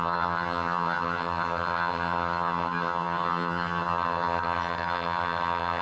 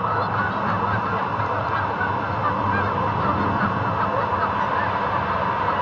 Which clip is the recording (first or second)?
second